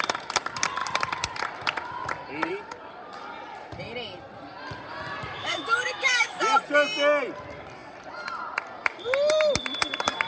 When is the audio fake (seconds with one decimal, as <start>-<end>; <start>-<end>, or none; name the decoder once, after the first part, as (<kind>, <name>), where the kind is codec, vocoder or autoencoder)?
5.4-6.4 (autoencoder, DAC-VAE)